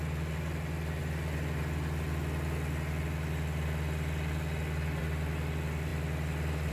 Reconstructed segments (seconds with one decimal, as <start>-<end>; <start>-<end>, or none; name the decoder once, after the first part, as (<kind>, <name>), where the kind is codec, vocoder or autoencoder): none